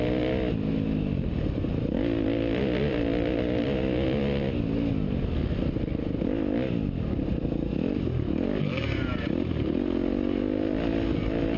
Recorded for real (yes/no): yes